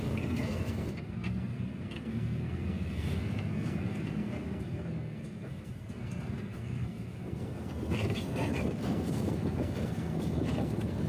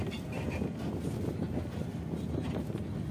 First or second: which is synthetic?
first